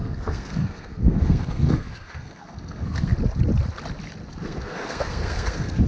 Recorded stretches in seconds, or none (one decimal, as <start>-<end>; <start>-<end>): 3.1-4.4